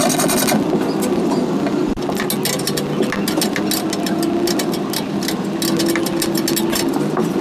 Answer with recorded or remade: recorded